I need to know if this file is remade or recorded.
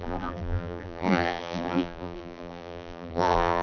remade